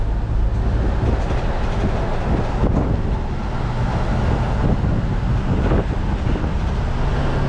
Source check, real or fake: real